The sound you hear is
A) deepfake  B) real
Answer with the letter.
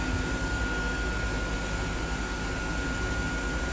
B